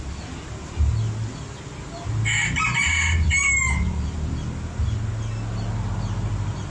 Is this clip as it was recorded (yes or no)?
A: yes